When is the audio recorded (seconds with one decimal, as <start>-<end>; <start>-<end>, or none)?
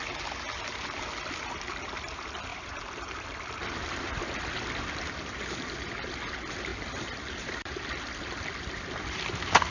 0.0-2.5; 4.0-6.7; 7.9-9.7